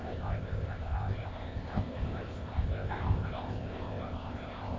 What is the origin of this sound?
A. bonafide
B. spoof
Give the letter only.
B